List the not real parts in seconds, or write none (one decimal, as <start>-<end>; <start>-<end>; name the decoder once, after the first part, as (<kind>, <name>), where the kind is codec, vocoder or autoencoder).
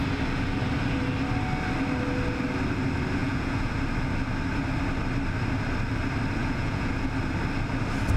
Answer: 3.2-3.7 (vocoder, Vocos); 6.4-7.1